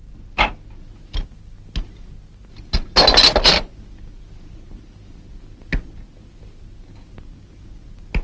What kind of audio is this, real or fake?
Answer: real